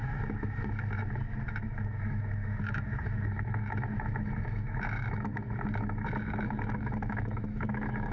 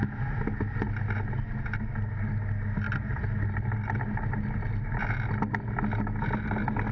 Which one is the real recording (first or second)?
second